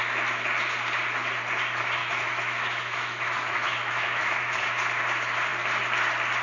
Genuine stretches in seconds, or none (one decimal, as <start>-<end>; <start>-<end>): 0.0-2.0; 4.7-6.4